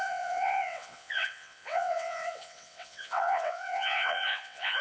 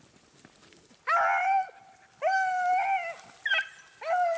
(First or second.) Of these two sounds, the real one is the second